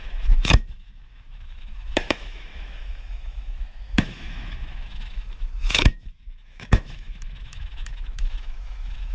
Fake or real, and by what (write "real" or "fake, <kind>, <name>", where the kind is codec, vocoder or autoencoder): fake, autoencoder, DAC-VAE